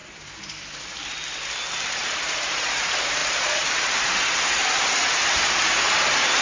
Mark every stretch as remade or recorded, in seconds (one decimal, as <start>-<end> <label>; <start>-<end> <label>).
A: 0.0-0.8 remade; 0.8-1.7 recorded; 1.7-2.8 remade; 2.8-3.2 recorded; 3.2-4.0 remade; 4.0-6.4 recorded